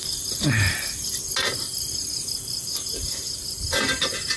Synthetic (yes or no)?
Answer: no